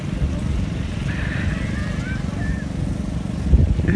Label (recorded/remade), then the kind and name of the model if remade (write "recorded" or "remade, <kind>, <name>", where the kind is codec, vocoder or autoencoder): recorded